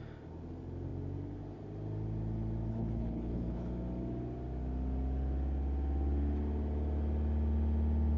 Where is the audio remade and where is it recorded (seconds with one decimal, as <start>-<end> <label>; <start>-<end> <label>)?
0.0-2.7 recorded; 2.7-3.7 remade; 3.7-8.2 recorded